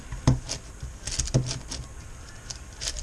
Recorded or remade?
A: recorded